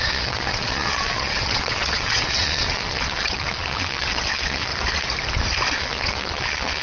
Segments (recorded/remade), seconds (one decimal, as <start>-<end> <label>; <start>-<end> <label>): 0.0-4.7 remade; 4.7-5.7 recorded; 5.7-6.8 remade

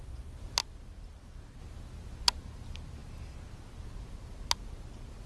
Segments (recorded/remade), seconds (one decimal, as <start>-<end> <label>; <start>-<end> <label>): 0.0-5.3 recorded